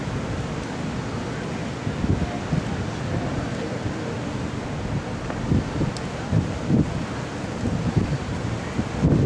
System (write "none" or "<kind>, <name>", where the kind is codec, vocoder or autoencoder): none